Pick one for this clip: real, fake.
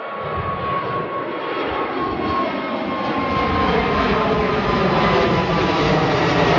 real